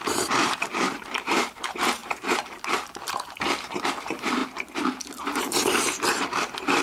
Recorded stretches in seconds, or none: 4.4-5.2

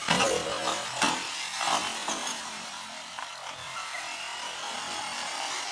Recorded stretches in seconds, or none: 0.0-2.0; 3.3-5.7

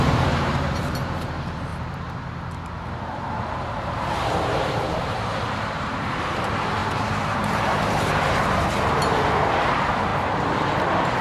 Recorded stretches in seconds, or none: 1.7-3.0; 10.1-11.2

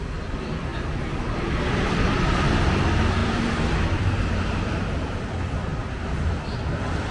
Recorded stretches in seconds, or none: 0.0-3.2; 4.3-7.1

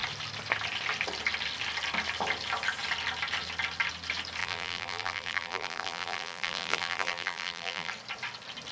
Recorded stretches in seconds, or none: 0.0-4.4; 7.9-8.7

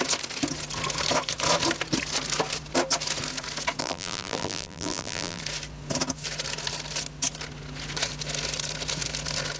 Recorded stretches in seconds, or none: 0.0-3.8; 5.4-9.6